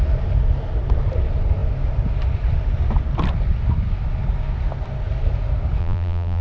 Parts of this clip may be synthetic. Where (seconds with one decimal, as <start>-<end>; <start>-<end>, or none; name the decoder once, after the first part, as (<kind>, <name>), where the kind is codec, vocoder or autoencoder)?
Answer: 5.8-6.4 (vocoder, BigVGAN v2)